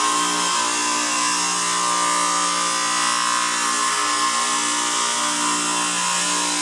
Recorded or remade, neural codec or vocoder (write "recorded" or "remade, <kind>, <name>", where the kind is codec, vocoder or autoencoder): recorded